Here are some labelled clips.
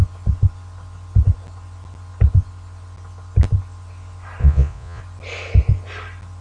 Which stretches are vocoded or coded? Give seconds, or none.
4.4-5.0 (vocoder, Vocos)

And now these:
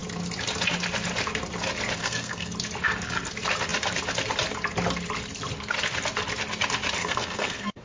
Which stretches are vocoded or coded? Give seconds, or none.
2.0-2.5 (codec, SNAC); 7.0-7.8

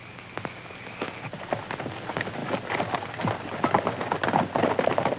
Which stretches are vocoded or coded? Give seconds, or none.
none